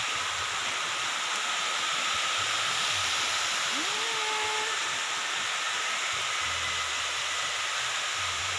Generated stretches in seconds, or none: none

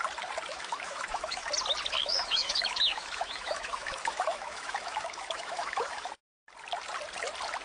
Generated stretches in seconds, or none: 0.5-1.5 (autoencoder, DAC-VAE); 2.0-6.1

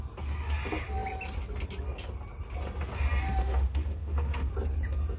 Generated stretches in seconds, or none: 3.4-4.5 (autoencoder, DAC-VAE)